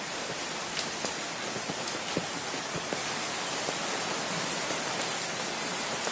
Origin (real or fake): real